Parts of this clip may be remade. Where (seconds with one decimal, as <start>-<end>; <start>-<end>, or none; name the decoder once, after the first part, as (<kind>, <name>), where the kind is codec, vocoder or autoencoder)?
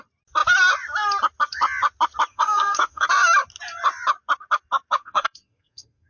2.3-3.1 (codec, SNAC); 5.0-6.1